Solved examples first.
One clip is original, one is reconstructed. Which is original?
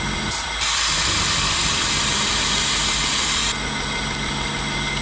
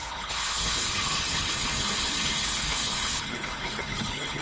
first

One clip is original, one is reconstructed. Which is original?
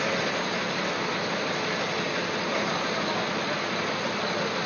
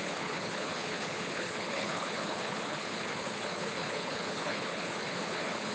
first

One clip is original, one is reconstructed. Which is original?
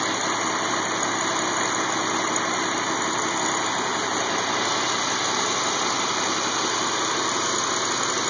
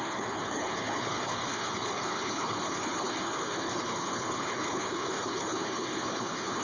first